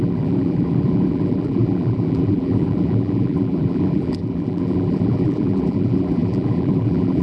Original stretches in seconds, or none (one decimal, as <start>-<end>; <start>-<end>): none